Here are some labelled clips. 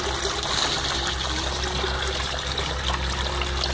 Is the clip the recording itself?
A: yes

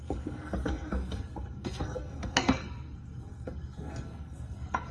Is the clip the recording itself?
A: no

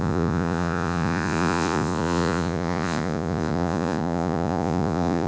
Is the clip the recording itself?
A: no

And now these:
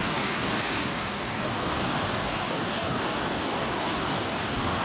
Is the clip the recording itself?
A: no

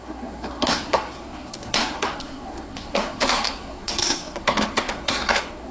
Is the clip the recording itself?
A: no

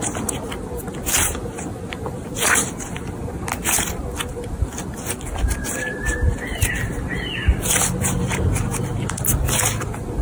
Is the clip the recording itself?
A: no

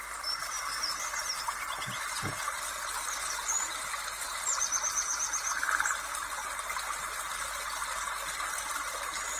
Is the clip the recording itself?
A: yes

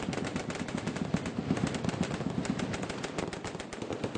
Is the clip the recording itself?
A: yes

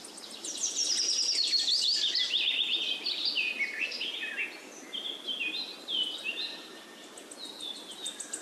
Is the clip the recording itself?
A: yes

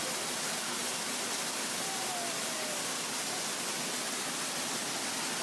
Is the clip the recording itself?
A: yes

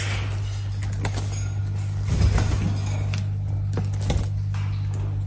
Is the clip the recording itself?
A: yes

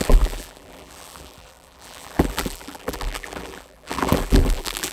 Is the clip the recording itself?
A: no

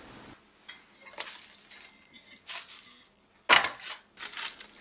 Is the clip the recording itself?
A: yes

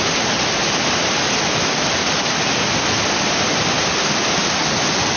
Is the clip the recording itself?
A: yes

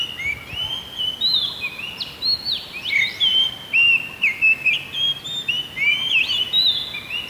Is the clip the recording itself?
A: yes